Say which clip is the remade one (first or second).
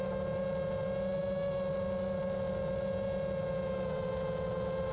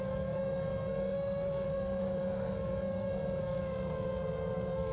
second